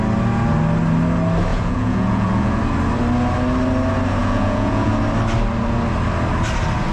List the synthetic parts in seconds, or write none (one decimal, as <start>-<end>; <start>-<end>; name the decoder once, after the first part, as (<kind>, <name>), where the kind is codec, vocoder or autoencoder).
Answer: 1.5-2.6 (vocoder, Vocos); 4.2-4.9